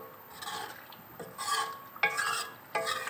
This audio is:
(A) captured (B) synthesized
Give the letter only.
A